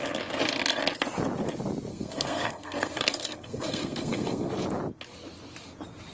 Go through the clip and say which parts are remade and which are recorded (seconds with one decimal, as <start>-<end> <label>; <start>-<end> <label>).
0.0-1.9 recorded; 1.9-4.5 remade; 4.5-6.1 recorded

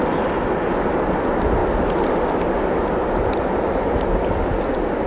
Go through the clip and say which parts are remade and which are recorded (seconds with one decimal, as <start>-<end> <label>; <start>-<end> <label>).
0.0-5.1 recorded

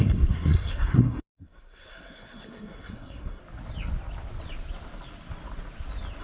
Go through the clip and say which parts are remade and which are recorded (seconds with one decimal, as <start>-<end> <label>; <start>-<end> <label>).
0.0-3.4 remade; 3.4-6.2 recorded

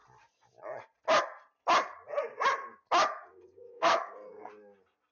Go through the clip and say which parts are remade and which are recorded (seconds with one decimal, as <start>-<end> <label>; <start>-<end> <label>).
0.0-3.3 recorded; 3.3-4.5 remade; 4.5-5.1 recorded

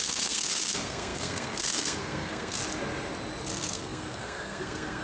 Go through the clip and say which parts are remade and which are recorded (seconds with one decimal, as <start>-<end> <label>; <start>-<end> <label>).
0.0-2.6 remade; 2.6-3.5 recorded; 3.5-5.0 remade